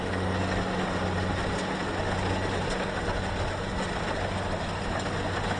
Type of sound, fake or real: real